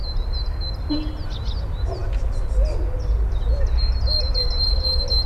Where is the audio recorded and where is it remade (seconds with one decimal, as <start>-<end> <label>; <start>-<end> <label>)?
0.0-5.3 recorded

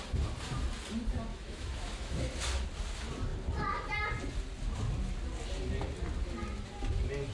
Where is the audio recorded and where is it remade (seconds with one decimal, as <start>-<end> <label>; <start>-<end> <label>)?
0.0-1.3 recorded; 1.3-2.3 remade; 2.3-7.3 recorded

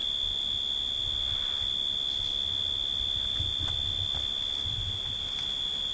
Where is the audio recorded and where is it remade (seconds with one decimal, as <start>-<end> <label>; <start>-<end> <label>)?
0.0-5.9 recorded

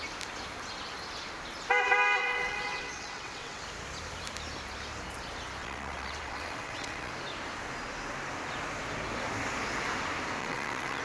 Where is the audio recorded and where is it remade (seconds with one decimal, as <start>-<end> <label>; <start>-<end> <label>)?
0.0-2.2 recorded; 2.2-3.6 remade; 3.6-5.6 recorded; 5.6-7.1 remade; 7.1-10.4 recorded; 10.4-11.0 remade

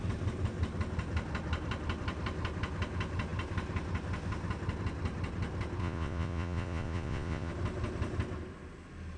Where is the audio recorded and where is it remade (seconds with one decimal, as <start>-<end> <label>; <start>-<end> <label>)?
0.0-5.8 recorded; 5.8-7.5 remade; 7.5-9.2 recorded

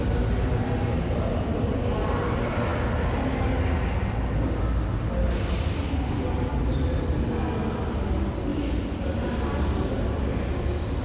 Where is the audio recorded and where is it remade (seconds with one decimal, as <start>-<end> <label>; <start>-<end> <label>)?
0.0-11.0 recorded